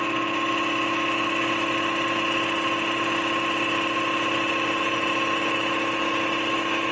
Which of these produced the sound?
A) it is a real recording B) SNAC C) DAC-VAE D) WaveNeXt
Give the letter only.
A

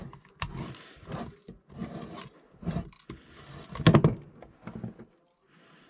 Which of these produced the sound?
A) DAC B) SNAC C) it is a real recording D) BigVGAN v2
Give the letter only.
C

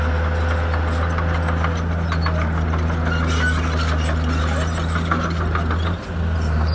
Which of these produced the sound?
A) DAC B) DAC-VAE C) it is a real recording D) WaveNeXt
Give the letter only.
C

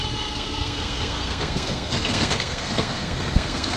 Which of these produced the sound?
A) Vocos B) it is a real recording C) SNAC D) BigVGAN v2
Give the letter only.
C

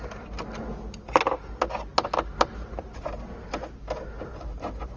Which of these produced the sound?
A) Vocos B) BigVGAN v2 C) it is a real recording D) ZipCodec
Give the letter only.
C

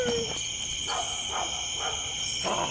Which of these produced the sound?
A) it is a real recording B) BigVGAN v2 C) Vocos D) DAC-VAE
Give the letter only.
A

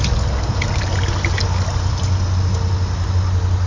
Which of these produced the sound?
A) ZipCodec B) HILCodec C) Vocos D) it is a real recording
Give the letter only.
D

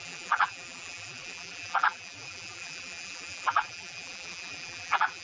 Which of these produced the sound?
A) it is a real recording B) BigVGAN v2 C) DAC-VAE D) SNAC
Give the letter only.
B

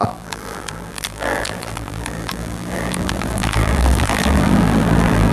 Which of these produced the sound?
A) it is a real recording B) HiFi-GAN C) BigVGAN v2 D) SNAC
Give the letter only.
C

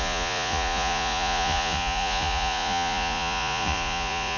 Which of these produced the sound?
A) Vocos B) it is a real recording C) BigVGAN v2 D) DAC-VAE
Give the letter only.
A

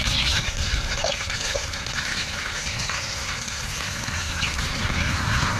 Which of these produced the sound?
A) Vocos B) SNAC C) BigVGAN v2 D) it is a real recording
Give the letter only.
B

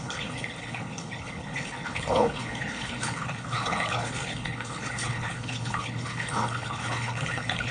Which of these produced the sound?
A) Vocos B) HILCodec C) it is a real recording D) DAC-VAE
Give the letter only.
B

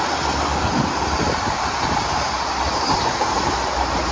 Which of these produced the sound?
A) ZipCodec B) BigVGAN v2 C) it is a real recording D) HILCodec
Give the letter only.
C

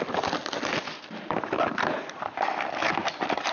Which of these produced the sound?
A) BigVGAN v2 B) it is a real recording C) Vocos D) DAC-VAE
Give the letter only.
B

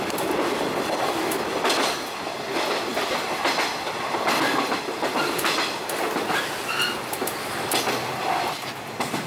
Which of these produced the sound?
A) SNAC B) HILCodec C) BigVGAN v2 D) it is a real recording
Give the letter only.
D